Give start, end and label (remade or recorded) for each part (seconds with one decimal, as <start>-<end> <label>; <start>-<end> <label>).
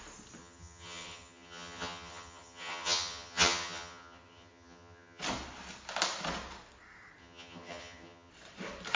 0.0-0.4 recorded; 0.4-5.2 remade; 5.2-7.2 recorded; 7.2-8.3 remade; 8.3-9.0 recorded